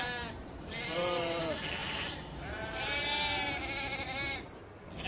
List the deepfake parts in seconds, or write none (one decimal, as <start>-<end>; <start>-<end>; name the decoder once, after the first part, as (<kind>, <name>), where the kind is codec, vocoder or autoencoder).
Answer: 0.4-1.4 (vocoder, BigVGAN v2); 1.8-4.6